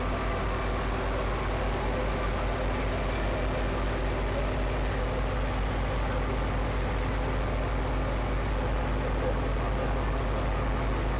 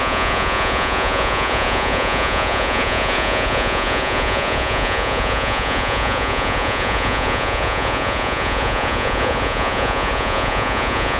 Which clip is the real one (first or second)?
first